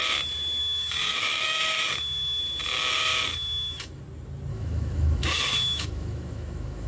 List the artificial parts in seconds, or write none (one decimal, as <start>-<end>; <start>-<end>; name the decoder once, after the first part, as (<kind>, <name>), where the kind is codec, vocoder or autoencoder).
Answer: 0.6-2.4 (autoencoder, DAC-VAE); 3.3-4.0; 4.5-6.9